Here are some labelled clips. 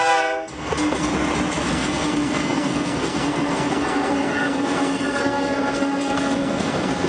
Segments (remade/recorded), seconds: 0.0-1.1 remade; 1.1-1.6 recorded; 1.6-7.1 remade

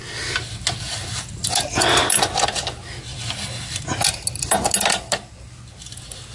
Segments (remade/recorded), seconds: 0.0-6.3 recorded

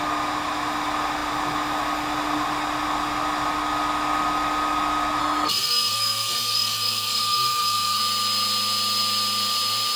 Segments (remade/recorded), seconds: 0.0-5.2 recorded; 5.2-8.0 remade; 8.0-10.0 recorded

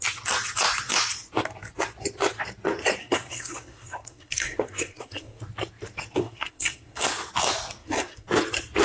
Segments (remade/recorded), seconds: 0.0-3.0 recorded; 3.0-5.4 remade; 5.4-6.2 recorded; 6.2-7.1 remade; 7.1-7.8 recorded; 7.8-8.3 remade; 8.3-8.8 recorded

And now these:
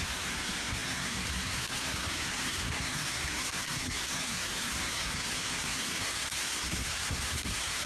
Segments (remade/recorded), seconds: 0.0-7.9 remade